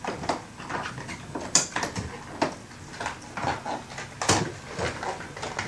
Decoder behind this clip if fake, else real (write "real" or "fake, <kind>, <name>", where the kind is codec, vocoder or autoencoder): real